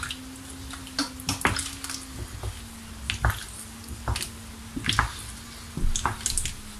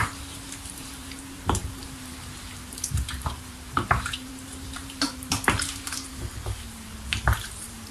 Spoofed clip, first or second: second